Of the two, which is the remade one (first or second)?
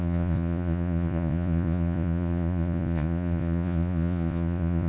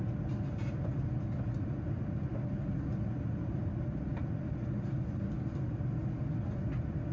first